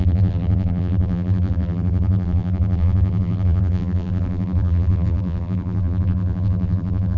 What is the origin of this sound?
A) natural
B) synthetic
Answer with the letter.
B